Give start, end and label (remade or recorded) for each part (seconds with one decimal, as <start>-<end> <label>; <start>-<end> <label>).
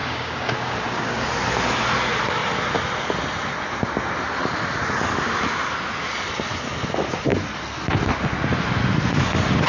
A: 0.0-1.3 remade; 1.3-9.7 recorded